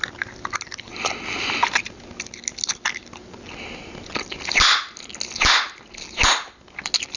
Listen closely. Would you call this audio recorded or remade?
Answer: recorded